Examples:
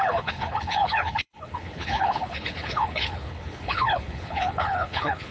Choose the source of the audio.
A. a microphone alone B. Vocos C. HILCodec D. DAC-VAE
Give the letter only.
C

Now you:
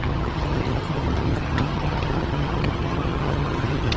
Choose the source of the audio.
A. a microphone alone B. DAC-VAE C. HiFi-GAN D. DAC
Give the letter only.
C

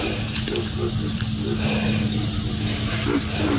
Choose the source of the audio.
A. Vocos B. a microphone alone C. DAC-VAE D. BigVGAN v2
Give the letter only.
B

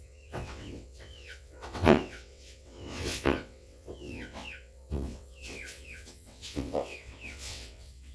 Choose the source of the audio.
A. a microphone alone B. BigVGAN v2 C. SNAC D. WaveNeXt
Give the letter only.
D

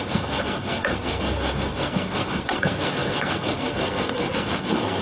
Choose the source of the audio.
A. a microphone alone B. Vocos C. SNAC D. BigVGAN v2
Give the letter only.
C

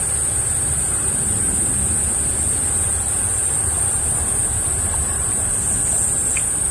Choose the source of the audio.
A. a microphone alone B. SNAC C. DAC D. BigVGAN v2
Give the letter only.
A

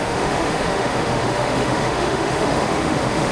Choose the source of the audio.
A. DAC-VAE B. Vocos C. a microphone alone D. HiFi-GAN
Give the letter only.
A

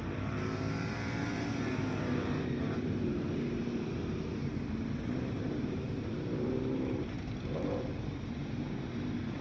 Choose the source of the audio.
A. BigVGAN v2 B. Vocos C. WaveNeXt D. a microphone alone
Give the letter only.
A